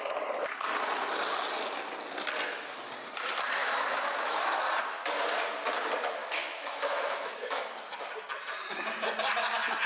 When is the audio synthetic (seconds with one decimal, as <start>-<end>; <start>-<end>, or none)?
3.6-4.6; 6.2-7.7